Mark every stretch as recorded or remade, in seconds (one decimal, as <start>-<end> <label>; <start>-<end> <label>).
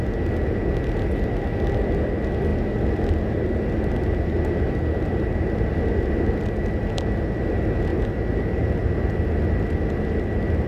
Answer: 0.0-10.7 recorded